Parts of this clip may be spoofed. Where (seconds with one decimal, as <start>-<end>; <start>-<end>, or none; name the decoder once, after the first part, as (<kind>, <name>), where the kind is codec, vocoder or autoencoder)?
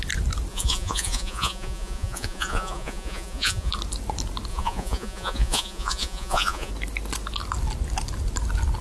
0.5-3.7 (vocoder, Vocos); 4.5-6.7